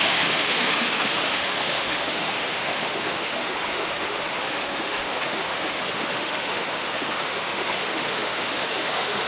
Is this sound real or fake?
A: fake